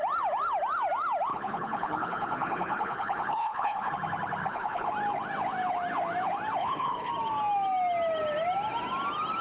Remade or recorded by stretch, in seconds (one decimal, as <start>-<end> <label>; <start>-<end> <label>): 0.0-1.3 recorded; 1.3-3.9 remade; 3.9-4.4 recorded; 4.4-4.9 remade; 4.9-6.6 recorded; 6.6-7.1 remade; 7.1-9.4 recorded